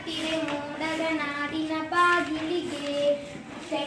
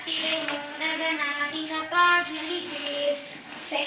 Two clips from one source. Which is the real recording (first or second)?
first